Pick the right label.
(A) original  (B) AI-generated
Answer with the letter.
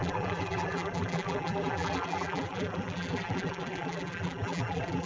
B